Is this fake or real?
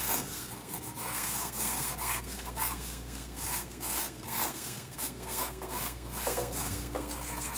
fake